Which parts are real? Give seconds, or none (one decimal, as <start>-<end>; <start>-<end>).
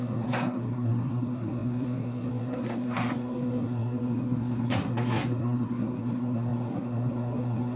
none